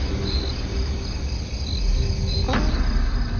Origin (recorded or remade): recorded